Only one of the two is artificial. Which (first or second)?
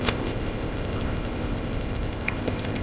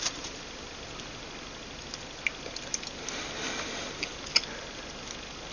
first